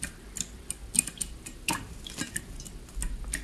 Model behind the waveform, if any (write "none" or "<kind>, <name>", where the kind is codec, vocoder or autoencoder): none